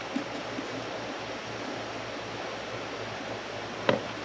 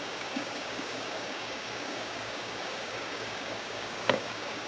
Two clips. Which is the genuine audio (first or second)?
first